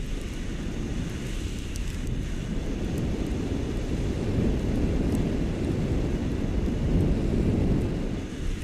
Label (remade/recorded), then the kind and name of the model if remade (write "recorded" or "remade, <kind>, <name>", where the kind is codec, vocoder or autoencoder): recorded